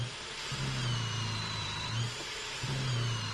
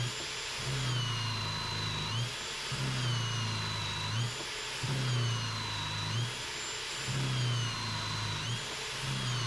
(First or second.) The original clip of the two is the second